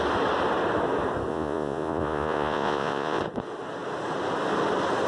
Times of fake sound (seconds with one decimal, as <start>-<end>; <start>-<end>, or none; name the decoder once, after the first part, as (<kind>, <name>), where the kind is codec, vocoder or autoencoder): 1.3-3.2 (vocoder, Vocos)